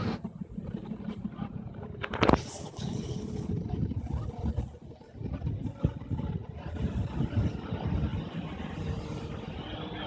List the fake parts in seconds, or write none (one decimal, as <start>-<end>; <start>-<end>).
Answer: 2.6-3.5